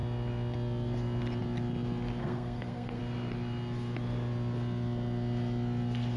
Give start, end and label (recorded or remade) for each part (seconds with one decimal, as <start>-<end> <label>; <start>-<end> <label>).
0.0-2.2 recorded; 2.2-3.0 remade; 3.0-6.2 recorded